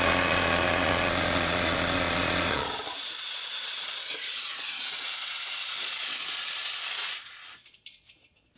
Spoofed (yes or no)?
yes